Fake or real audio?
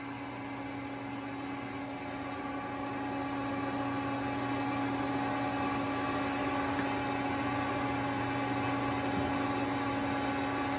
real